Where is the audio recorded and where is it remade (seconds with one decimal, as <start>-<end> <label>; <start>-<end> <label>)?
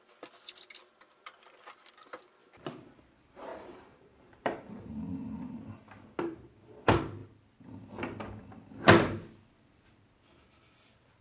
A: 0.0-3.5 recorded; 3.5-4.9 remade; 4.9-11.2 recorded